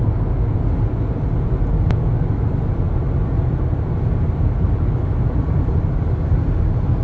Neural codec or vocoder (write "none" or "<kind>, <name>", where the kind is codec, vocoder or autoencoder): none